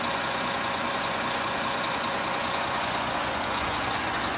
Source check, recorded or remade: remade